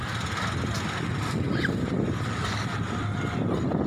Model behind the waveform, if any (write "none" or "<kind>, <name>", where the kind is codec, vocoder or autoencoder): vocoder, BigVGAN v2